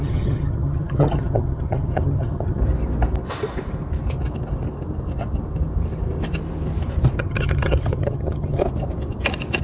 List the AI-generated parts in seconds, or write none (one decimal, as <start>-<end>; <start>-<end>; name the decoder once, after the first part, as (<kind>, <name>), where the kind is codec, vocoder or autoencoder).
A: 0.0-2.6 (vocoder, HiFi-GAN); 7.2-8.6